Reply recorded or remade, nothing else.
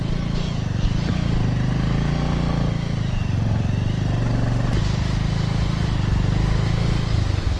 recorded